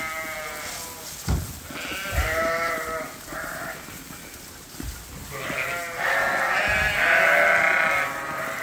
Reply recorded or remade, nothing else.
recorded